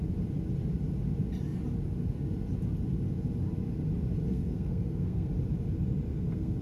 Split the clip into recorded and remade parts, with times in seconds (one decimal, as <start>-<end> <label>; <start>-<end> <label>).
0.0-4.3 recorded; 4.3-5.3 remade; 5.3-6.1 recorded; 6.1-6.6 remade